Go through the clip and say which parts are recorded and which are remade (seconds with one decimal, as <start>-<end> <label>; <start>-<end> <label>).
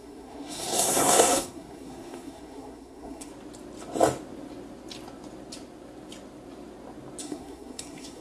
0.0-3.3 remade; 3.3-7.2 recorded; 7.2-8.2 remade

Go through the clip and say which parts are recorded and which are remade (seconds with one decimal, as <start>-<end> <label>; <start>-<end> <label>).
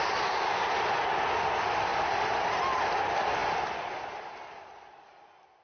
0.0-5.6 recorded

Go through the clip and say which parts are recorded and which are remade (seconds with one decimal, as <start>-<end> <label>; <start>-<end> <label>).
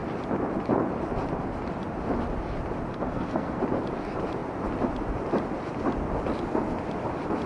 0.0-2.9 recorded; 2.9-3.6 remade; 3.6-7.5 recorded